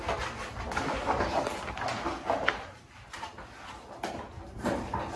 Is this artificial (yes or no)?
no